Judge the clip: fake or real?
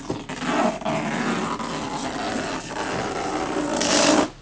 real